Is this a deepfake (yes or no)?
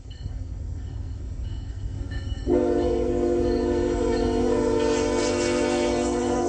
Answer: yes